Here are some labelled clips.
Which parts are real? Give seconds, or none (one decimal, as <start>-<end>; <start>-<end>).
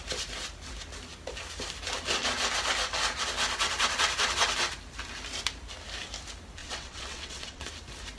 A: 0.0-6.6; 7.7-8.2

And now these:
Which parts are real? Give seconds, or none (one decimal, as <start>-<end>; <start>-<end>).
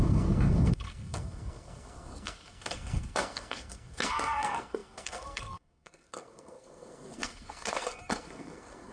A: none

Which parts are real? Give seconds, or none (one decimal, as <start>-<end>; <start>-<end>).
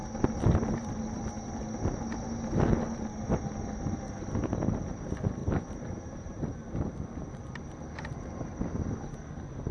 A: 0.0-9.7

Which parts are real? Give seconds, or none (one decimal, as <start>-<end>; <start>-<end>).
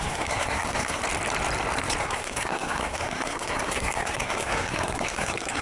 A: 1.0-2.0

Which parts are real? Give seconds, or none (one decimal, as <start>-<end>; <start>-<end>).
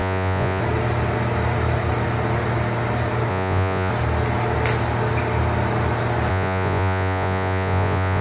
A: 0.6-3.3; 3.9-6.3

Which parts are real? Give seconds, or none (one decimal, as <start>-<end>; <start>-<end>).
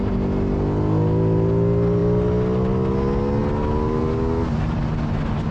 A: 0.0-5.5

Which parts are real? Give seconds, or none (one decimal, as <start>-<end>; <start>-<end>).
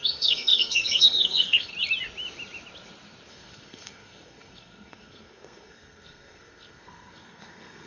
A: 1.7-3.3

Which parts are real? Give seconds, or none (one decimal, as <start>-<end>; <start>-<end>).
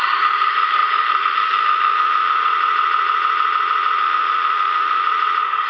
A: 2.5-4.0; 5.0-5.7